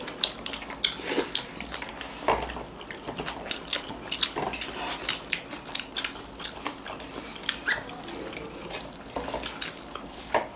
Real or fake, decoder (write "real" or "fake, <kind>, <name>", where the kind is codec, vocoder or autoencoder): real